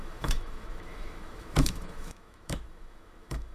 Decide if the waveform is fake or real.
fake